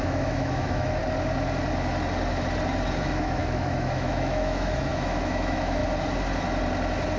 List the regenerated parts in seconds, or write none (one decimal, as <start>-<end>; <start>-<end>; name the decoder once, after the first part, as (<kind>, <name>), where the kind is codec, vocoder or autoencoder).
0.0-1.0 (autoencoder, DAC-VAE); 3.0-5.8